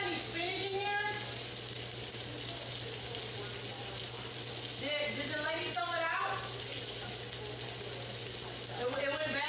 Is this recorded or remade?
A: recorded